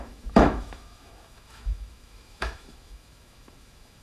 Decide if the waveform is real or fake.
fake